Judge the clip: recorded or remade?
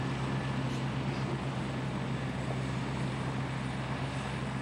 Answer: recorded